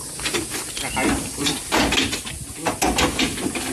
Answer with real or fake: real